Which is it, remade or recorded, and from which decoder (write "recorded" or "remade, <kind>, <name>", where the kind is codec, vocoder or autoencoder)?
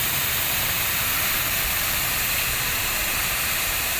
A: remade, vocoder, BigVGAN v2